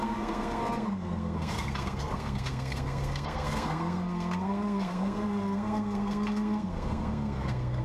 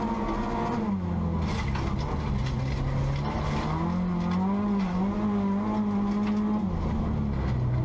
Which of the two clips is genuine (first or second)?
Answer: second